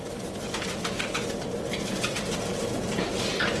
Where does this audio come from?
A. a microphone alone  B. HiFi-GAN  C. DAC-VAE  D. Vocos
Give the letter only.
A